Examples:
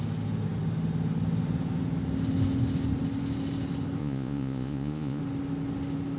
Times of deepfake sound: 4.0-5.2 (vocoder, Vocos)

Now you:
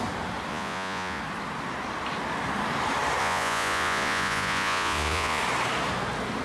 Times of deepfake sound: 0.5-1.2 (vocoder, Vocos); 3.2-5.4

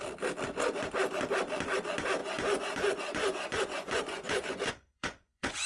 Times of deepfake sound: 2.2-5.7 (vocoder, Vocos)

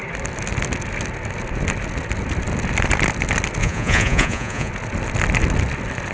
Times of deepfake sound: 3.6-4.7 (vocoder, Vocos)

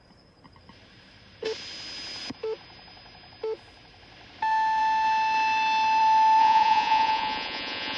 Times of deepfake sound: 6.4-8.0 (vocoder, Vocos)

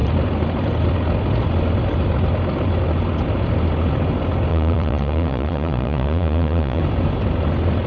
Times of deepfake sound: 4.5-6.8 (vocoder, Vocos)

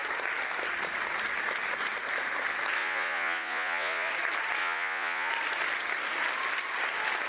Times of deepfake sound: 2.8-4.1 (vocoder, Vocos); 4.6-5.3

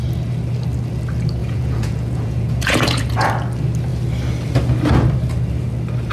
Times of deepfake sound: 1.4-3.3 (vocoder, Vocos)